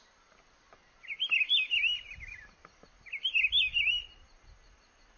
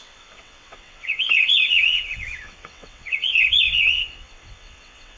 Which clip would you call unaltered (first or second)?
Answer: first